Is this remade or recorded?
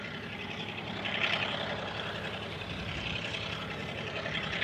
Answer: remade